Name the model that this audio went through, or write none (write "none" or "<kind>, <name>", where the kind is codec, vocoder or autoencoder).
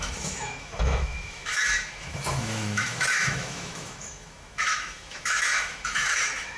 autoencoder, DAC-VAE